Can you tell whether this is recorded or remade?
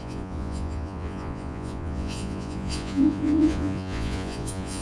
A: remade